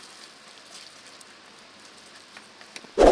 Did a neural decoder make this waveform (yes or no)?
no